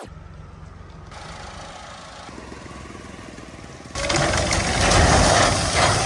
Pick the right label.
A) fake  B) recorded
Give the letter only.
B